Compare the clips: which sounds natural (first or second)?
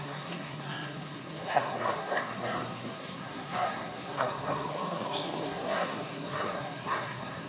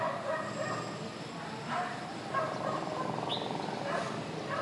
second